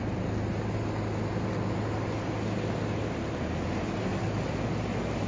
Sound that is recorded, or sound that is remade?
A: recorded